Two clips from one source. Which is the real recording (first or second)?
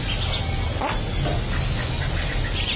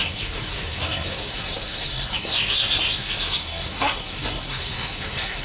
first